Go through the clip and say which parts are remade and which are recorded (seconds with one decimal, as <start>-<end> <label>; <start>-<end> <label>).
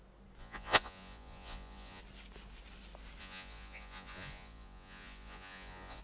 0.0-0.4 recorded; 0.4-2.0 remade; 2.0-3.2 recorded; 3.2-6.0 remade